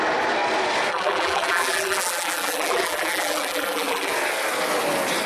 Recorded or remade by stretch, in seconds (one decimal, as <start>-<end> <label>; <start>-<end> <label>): 0.0-0.9 recorded; 0.9-4.1 remade; 4.1-5.3 recorded